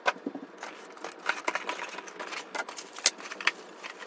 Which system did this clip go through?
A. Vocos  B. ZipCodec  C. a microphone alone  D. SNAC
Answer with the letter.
C